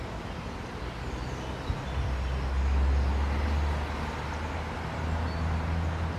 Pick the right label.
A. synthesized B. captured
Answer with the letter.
B